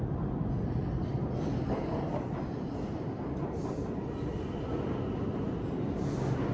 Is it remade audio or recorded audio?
recorded